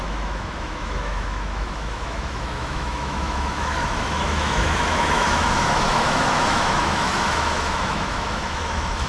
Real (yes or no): no